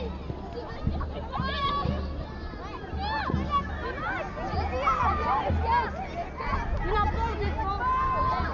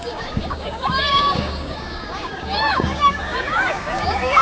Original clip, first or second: first